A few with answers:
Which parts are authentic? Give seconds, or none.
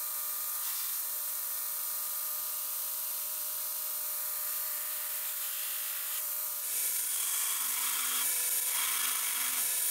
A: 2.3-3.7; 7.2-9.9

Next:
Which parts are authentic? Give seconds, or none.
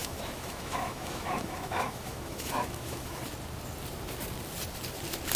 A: 3.2-5.4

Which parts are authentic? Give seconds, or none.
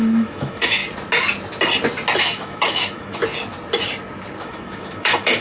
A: 0.8-2.2; 3.2-4.4